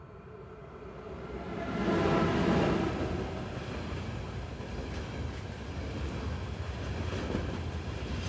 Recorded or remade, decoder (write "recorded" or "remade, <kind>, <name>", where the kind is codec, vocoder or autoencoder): recorded